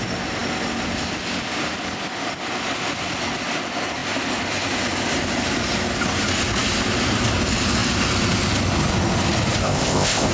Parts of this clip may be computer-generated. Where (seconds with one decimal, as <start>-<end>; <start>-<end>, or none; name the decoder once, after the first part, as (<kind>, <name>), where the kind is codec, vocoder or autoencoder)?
9.6-10.3 (codec, ZipCodec)